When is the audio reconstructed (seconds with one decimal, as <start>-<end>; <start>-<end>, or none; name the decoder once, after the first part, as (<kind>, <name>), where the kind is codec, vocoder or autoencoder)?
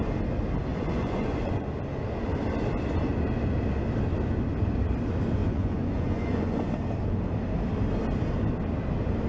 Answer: 0.7-1.8 (vocoder, Vocos); 5.4-6.7